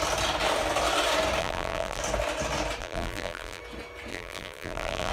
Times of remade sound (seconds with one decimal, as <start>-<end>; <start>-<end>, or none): 1.4-2.0; 2.8-3.6; 4.1-5.1